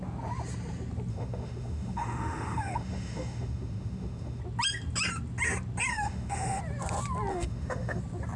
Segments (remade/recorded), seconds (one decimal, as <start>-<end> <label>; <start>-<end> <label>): 0.0-1.1 recorded; 1.1-4.4 remade; 4.4-5.9 recorded; 5.9-6.6 remade; 6.6-7.3 recorded; 7.3-8.0 remade; 8.0-8.4 recorded